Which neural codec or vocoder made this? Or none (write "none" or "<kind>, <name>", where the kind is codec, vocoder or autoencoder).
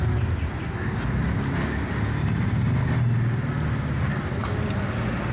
none